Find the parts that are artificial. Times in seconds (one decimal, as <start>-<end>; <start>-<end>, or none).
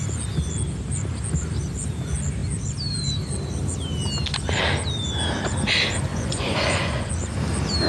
6.1-7.1